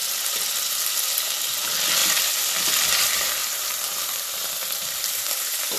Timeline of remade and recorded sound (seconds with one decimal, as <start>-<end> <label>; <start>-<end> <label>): 0.0-3.4 recorded; 3.4-5.8 remade